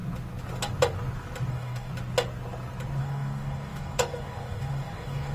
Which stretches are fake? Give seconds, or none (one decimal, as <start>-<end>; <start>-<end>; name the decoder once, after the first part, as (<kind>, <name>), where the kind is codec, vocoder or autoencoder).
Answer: 1.5-1.9 (codec, DAC); 3.0-5.3

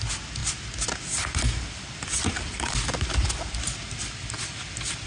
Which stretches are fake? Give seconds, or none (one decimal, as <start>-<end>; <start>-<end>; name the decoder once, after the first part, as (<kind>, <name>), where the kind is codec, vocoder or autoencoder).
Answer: none

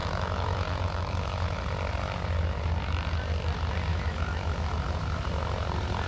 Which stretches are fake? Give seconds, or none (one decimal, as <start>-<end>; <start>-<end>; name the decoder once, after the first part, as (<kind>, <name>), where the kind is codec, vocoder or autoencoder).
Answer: 0.0-1.6 (autoencoder, DAC-VAE); 3.9-4.7

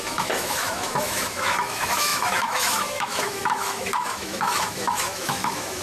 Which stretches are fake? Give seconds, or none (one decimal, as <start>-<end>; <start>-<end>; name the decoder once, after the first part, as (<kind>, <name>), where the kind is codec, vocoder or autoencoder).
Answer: 0.0-5.8 (autoencoder, DAC-VAE)

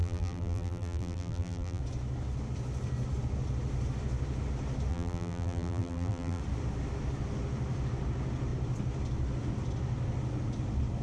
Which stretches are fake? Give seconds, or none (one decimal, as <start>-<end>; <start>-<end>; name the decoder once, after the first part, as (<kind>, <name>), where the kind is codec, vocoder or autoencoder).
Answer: 0.0-1.8 (vocoder, BigVGAN v2); 4.9-6.4

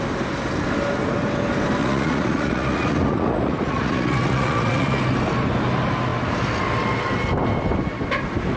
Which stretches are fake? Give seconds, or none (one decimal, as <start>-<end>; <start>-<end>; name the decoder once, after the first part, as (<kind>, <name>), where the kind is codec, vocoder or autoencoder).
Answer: 1.8-5.0 (vocoder, Vocos)

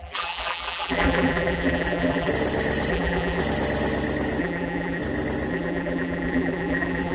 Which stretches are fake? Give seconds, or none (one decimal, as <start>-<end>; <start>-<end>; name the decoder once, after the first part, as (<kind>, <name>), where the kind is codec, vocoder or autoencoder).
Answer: 0.0-2.3 (vocoder, BigVGAN v2); 2.9-3.4; 4.4-5.0; 5.5-7.1